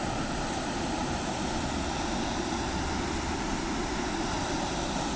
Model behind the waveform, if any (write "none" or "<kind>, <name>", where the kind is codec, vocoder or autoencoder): none